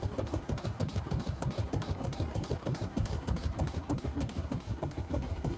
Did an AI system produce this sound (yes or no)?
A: yes